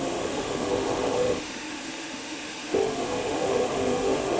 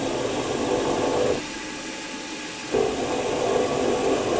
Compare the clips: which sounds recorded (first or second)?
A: second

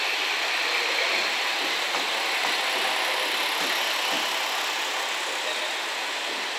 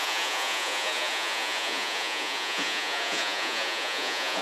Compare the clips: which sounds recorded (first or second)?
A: first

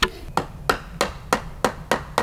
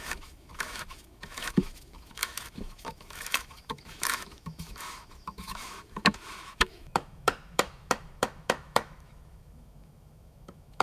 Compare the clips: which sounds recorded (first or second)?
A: first